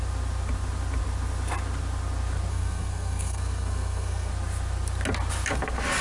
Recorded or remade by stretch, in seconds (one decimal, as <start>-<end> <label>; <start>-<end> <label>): 0.0-2.5 recorded; 2.5-4.3 remade; 4.3-6.0 recorded